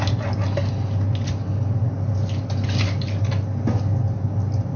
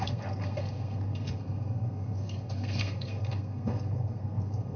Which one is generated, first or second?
second